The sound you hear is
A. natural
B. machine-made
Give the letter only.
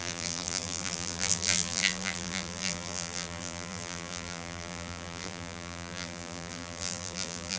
B